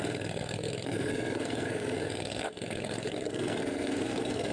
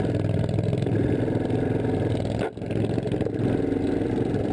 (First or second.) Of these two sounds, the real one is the second